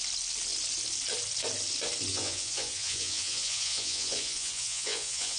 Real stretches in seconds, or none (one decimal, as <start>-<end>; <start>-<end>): 0.0-2.1